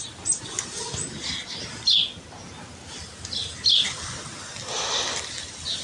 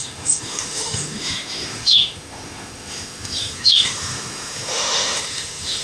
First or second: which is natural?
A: first